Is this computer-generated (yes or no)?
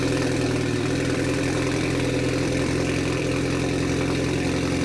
yes